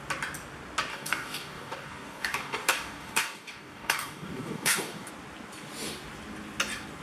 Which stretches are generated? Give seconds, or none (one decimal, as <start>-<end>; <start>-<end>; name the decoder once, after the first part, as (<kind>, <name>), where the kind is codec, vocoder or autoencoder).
0.9-5.1 (codec, DAC)